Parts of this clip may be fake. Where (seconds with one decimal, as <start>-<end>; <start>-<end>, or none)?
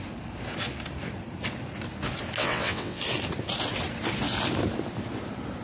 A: 2.4-3.0